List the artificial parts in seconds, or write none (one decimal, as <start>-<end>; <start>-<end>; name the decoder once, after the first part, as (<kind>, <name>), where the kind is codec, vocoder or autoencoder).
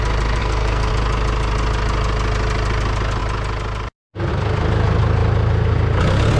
0.4-0.9 (codec, SNAC)